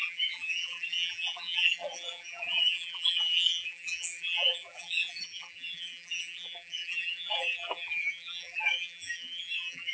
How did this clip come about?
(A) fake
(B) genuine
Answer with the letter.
A